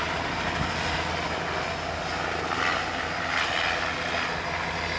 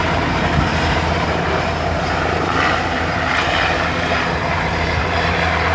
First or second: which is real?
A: first